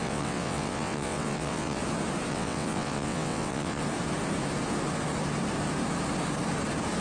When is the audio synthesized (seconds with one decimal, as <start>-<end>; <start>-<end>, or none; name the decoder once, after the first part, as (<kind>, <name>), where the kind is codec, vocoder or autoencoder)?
0.0-1.8 (vocoder, WaveNeXt); 2.3-3.8